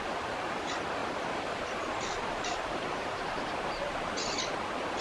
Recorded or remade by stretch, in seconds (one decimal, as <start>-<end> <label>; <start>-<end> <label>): 0.0-1.0 recorded; 1.0-4.0 remade; 4.0-5.0 recorded